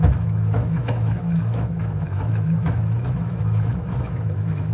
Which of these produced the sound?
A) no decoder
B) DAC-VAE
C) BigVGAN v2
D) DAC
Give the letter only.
B